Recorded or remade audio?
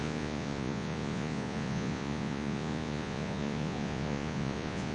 remade